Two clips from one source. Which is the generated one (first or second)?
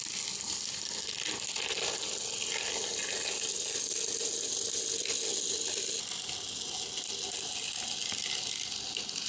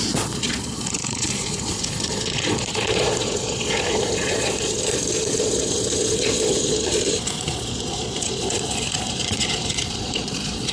second